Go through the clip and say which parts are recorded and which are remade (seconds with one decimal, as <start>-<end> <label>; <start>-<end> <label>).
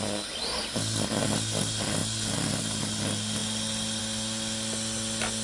0.0-5.4 recorded